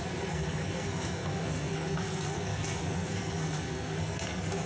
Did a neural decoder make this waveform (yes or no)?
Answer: yes